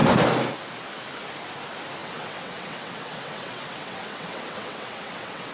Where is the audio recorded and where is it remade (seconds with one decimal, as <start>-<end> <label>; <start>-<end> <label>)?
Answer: 0.0-2.0 recorded; 2.0-5.5 remade